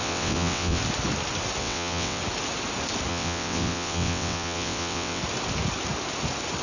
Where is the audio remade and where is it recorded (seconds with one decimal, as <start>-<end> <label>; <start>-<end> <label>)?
0.0-0.8 remade; 0.8-1.6 recorded; 1.6-2.2 remade; 2.2-3.1 recorded; 3.1-5.2 remade; 5.2-6.6 recorded